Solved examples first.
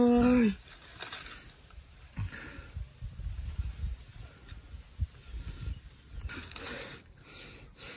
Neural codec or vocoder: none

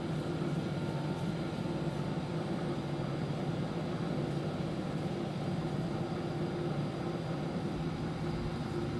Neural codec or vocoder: none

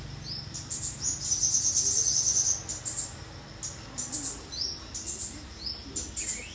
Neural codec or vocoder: none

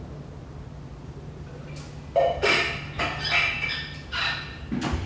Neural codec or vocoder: none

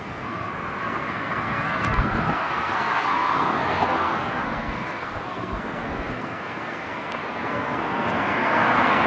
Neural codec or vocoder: codec, SNAC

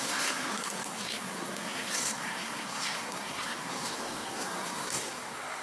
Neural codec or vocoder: codec, SNAC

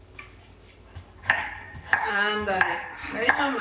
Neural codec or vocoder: codec, DAC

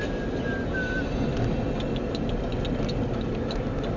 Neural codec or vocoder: none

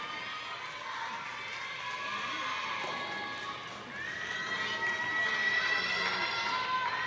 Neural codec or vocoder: none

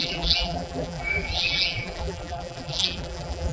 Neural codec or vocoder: vocoder, BigVGAN v2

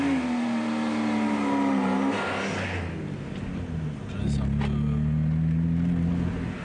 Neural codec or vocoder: none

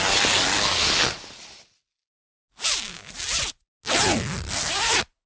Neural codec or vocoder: none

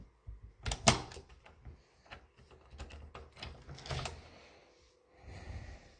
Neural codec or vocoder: none